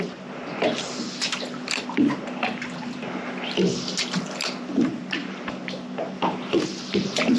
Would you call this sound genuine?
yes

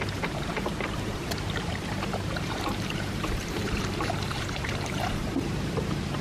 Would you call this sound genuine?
no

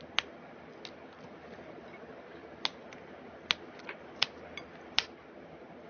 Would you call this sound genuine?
yes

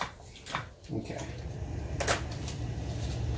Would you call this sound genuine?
yes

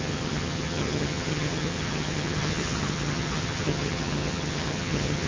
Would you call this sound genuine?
no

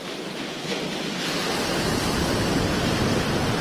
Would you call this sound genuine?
yes